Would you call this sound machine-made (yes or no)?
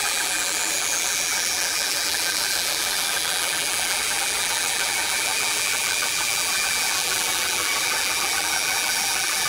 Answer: yes